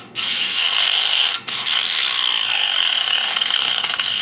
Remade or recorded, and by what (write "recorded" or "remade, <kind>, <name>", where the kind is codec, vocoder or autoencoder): remade, codec, SNAC